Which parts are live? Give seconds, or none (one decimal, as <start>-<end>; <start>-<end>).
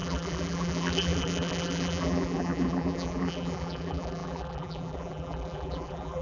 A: none